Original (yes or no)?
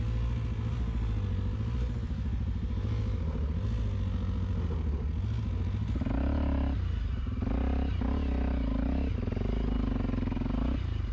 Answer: yes